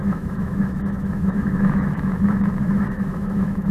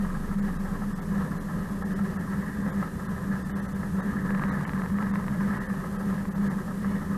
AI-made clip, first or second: first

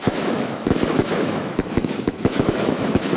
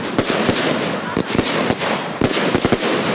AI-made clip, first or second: first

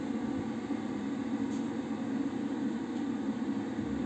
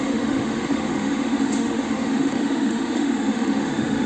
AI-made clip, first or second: second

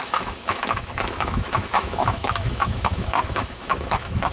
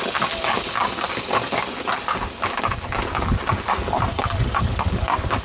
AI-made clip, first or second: first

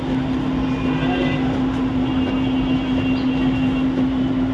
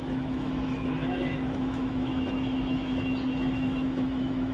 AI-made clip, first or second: second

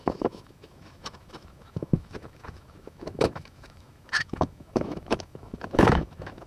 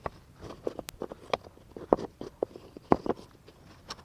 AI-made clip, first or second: first